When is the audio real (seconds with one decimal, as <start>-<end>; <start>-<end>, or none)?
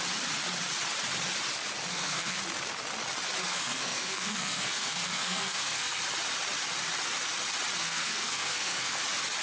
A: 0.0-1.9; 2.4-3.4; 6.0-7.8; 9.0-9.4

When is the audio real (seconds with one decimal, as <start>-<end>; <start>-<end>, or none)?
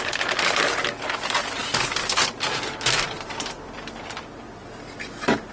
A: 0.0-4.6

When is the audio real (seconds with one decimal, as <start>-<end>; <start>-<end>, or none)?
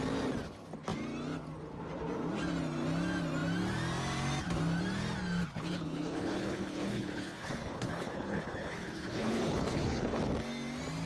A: 0.0-5.5; 10.2-11.1